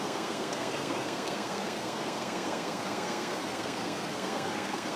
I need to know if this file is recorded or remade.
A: remade